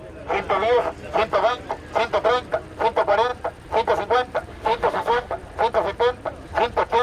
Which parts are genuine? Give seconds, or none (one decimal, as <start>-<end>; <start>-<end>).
0.0-4.5; 5.3-7.0

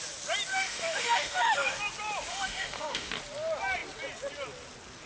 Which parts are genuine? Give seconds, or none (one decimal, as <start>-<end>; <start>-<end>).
0.0-0.5; 1.8-2.3; 3.1-5.1

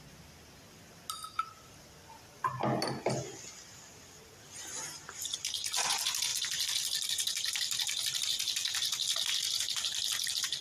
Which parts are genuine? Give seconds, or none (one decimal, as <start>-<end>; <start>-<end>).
0.0-10.6

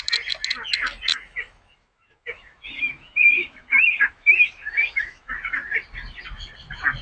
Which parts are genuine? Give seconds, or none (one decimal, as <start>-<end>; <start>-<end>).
0.0-1.1; 5.3-7.0